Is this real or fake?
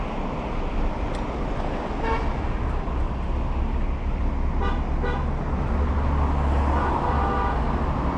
real